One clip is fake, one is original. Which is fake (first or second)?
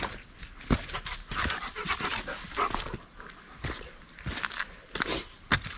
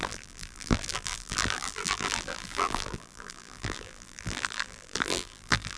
second